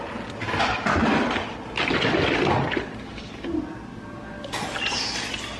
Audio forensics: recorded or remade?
recorded